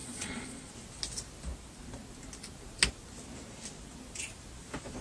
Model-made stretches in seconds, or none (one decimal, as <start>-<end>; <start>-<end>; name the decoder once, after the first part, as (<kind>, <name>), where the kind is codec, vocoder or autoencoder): 0.0-0.7 (vocoder, Vocos)